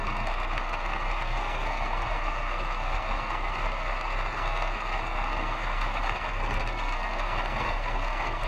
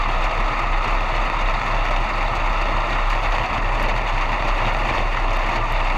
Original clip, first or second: second